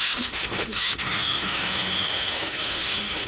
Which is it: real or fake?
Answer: fake